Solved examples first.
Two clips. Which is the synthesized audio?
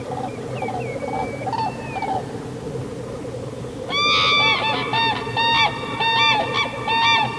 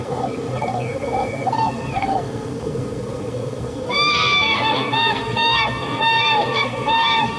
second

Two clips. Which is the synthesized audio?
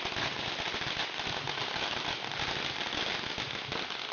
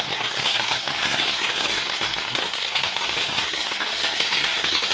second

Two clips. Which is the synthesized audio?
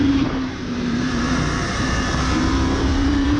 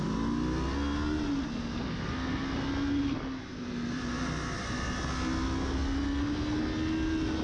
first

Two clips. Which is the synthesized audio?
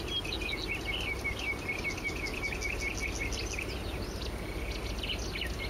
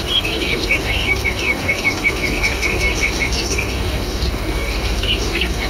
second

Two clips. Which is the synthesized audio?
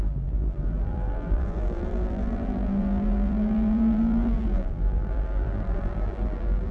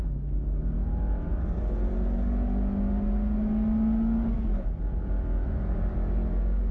first